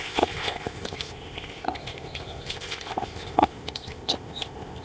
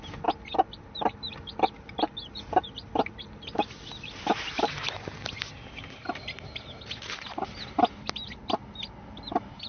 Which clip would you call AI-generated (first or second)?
first